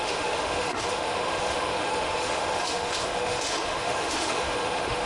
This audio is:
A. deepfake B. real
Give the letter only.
A